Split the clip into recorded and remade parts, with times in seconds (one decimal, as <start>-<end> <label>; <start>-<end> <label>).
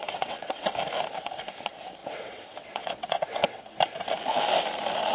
0.0-0.8 remade; 0.8-2.0 recorded; 2.0-3.6 remade; 3.6-5.1 recorded